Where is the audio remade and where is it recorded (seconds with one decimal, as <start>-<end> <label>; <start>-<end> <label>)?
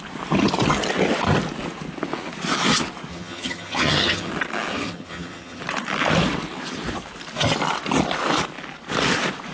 0.0-3.1 recorded; 3.1-4.3 remade; 4.3-4.7 recorded; 4.7-5.6 remade; 5.6-9.5 recorded